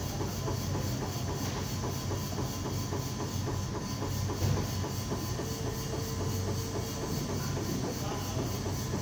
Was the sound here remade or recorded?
recorded